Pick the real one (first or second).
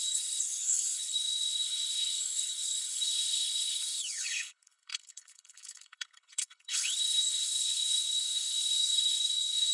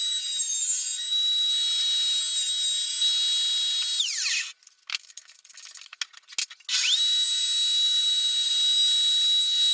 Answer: second